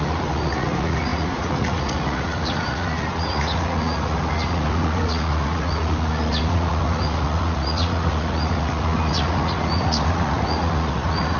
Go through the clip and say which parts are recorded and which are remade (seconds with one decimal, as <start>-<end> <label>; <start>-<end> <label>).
0.0-11.4 remade